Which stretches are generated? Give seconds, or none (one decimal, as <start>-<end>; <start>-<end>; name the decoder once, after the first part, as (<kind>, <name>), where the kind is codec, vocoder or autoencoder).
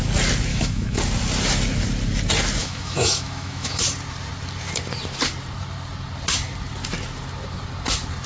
0.5-1.0 (autoencoder, DAC-VAE); 2.6-3.8